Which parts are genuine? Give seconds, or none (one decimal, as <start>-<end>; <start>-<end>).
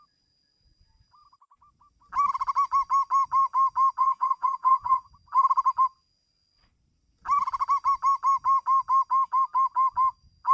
0.0-4.0; 5.1-10.5